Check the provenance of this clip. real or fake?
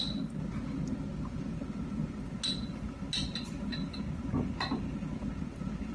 real